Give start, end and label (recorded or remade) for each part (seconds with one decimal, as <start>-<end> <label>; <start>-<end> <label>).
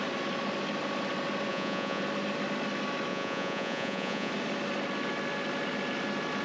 0.0-1.5 recorded; 1.5-2.0 remade; 2.0-3.1 recorded; 3.1-4.3 remade; 4.3-6.4 recorded